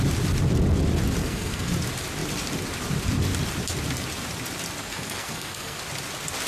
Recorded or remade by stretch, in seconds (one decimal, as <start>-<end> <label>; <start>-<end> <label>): 0.0-1.2 recorded; 1.2-1.7 remade; 1.7-4.8 recorded; 4.8-5.8 remade; 5.8-6.5 recorded